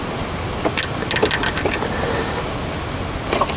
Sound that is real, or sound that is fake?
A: real